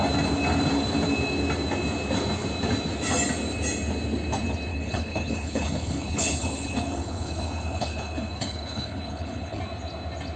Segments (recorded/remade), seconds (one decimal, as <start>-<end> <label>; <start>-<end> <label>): 0.0-4.7 recorded; 4.7-9.6 remade; 9.6-10.4 recorded